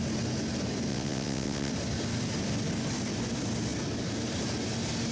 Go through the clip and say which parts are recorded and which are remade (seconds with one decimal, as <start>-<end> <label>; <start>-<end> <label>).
0.0-0.9 recorded; 0.9-1.7 remade; 1.7-5.1 recorded